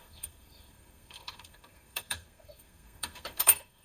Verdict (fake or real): fake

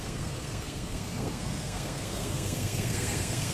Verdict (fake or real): fake